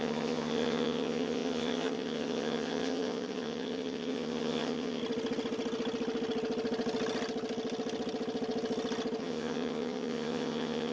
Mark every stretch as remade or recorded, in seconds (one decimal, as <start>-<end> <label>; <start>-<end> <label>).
0.0-5.0 remade; 5.0-9.2 recorded; 9.2-10.9 remade